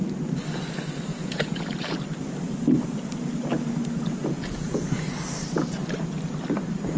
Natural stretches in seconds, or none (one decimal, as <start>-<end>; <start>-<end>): 0.0-1.1; 1.6-4.2; 5.0-7.0